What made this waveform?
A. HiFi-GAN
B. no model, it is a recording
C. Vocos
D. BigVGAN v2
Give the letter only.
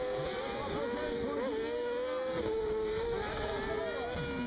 B